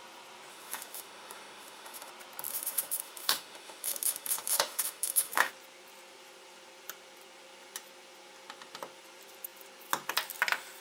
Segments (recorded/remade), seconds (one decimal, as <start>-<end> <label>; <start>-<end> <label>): 0.0-0.5 recorded; 0.5-2.1 remade; 2.1-2.5 recorded; 2.5-5.5 remade; 5.5-10.8 recorded